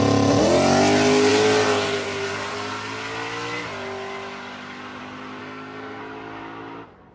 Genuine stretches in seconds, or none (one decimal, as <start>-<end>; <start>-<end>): 0.0-5.4; 6.0-7.1